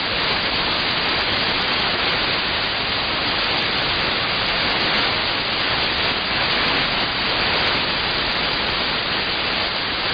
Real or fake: real